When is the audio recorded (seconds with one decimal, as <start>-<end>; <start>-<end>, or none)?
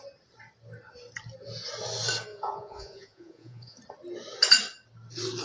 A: 0.0-2.3; 3.8-5.4